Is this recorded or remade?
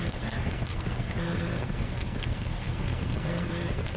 remade